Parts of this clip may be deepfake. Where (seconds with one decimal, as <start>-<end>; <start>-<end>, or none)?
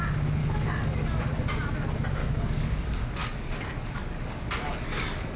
0.4-1.2; 2.2-5.4